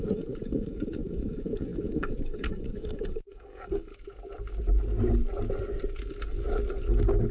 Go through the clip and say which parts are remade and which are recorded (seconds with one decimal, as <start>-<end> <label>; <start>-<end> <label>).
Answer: 0.0-3.9 remade; 3.9-7.3 recorded